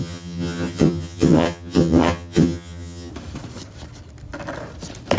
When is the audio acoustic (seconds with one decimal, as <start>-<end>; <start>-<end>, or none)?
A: 3.1-5.2